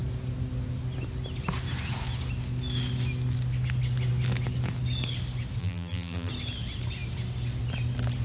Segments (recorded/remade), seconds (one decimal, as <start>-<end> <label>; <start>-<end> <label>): 0.0-5.6 recorded; 5.6-6.3 remade; 6.3-8.2 recorded